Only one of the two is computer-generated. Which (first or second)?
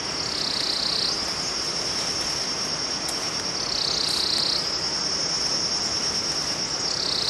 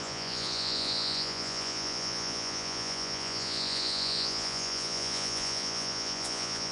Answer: second